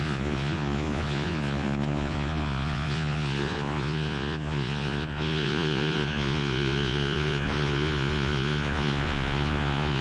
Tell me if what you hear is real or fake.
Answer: fake